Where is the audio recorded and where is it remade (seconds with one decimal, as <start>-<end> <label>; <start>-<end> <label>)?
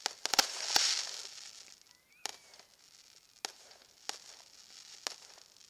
0.0-5.7 recorded